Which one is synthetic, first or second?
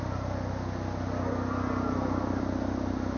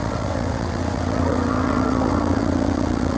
second